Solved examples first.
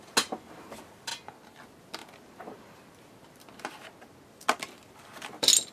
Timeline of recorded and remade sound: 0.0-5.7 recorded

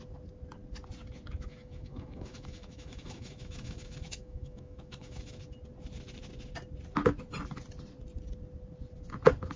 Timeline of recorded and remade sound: 0.0-1.5 recorded; 1.5-5.4 remade; 5.4-9.6 recorded

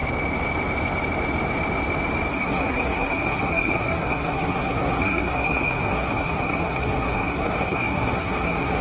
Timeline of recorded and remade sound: 0.0-2.3 recorded; 2.3-8.8 remade

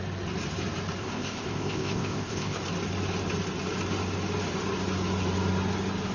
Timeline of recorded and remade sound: 0.0-1.0 recorded; 1.0-2.6 remade; 2.6-6.1 recorded

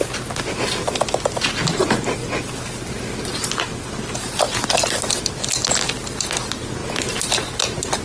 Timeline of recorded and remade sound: 0.0-8.0 recorded

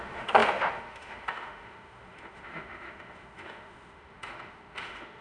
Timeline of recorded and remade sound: 0.0-5.2 remade

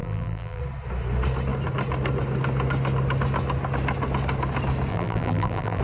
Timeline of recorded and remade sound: 0.0-0.6 remade; 0.6-4.9 recorded; 4.9-5.8 remade

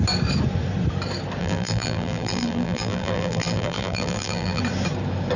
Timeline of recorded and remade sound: 0.0-1.4 recorded; 1.4-4.6 remade; 4.6-5.4 recorded